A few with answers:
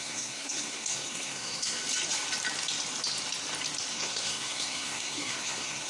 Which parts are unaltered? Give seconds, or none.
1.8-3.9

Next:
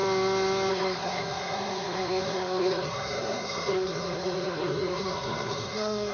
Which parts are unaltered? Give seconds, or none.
0.0-0.7